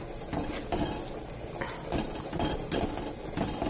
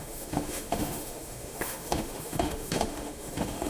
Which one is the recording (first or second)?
first